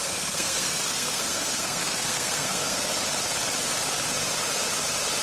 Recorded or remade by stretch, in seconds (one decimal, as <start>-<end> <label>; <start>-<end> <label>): 0.0-2.9 remade; 2.9-5.2 recorded

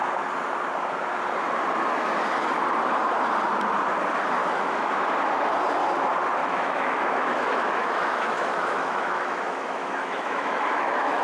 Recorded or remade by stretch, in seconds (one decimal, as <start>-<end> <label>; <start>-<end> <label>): 0.0-4.4 recorded; 4.4-4.9 remade; 4.9-6.4 recorded; 6.4-11.2 remade

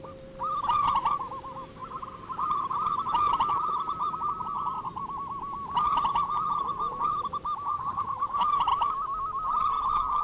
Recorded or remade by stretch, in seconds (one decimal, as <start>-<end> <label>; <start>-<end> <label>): 0.0-10.2 recorded

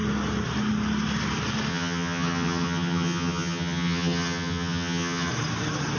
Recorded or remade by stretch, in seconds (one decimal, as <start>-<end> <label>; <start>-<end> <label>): 0.0-1.7 recorded; 1.7-5.3 remade; 5.3-6.0 recorded

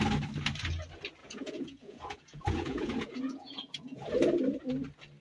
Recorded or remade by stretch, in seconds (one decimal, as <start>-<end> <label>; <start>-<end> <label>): 0.0-1.2 recorded; 1.2-4.1 remade; 4.1-5.2 recorded

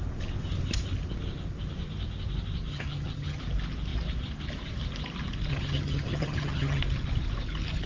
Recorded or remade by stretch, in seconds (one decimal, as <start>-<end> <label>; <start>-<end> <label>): 0.0-2.7 recorded; 2.7-3.4 remade; 3.4-5.5 recorded; 5.5-6.8 remade; 6.8-7.9 recorded

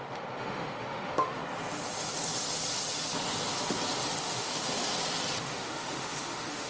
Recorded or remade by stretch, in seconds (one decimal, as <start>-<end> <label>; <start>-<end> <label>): 0.0-1.4 remade; 1.4-4.2 recorded; 4.2-4.9 remade; 4.9-5.4 recorded; 5.4-6.7 remade

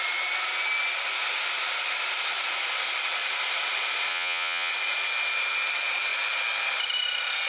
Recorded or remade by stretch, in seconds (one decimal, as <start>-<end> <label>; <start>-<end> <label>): 0.0-4.1 recorded; 4.1-4.7 remade; 4.7-7.5 recorded